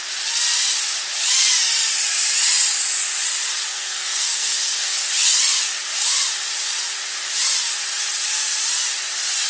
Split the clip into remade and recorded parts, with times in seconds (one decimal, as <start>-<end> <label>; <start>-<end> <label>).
0.0-3.7 recorded; 3.7-5.1 remade; 5.1-9.5 recorded